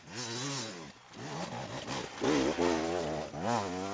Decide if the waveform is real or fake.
real